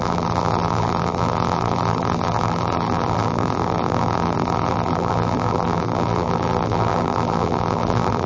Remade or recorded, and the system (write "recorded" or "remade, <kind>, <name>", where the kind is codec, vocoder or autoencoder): remade, vocoder, BigVGAN v2